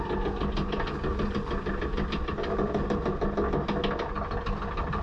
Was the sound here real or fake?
real